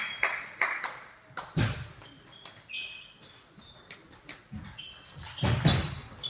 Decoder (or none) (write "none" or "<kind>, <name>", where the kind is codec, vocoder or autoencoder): none